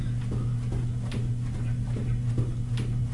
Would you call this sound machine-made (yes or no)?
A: no